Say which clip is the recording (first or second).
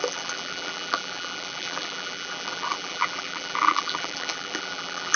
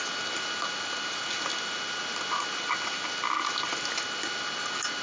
second